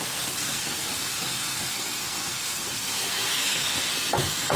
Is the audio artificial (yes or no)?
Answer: yes